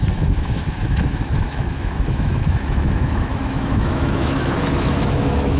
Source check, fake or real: fake